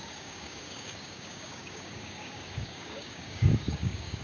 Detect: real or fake fake